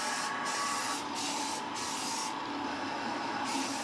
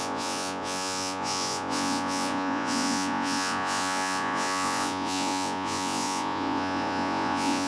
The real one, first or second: first